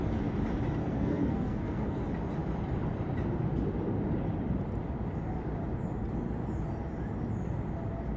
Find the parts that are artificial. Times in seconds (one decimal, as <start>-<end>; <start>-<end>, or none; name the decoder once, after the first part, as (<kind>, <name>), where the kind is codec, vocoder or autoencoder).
0.8-2.0 (codec, SNAC)